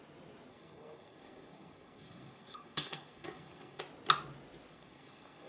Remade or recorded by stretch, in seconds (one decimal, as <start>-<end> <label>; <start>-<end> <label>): 0.0-0.5 recorded; 0.5-3.8 remade; 3.8-4.7 recorded; 4.7-5.5 remade